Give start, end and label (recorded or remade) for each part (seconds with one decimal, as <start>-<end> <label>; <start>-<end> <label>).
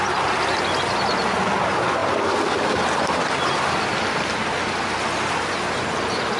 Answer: 0.0-6.4 recorded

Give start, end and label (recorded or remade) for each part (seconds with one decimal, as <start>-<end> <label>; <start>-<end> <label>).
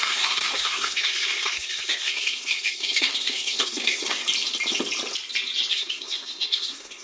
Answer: 0.0-4.2 remade; 4.2-5.7 recorded; 5.7-7.0 remade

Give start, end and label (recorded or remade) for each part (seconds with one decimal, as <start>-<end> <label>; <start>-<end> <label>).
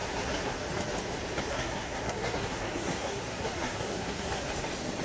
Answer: 0.0-0.6 remade; 0.6-1.5 recorded; 1.5-4.5 remade; 4.5-5.0 recorded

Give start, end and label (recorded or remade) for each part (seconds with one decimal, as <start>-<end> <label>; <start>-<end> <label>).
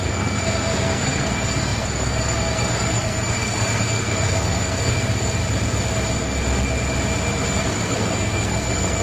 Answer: 0.0-5.4 remade; 5.4-7.5 recorded; 7.5-9.0 remade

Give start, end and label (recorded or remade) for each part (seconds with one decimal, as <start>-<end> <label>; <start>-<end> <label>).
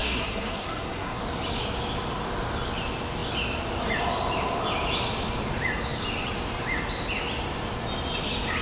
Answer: 0.0-1.2 remade; 1.2-8.6 recorded